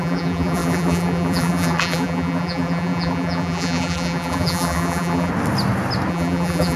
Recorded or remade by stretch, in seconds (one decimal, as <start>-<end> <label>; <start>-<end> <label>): 0.0-5.3 remade; 5.3-6.1 recorded; 6.1-6.8 remade